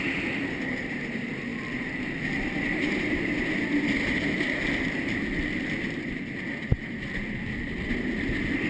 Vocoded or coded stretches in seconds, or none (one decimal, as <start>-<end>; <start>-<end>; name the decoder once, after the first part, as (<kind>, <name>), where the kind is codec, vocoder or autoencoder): none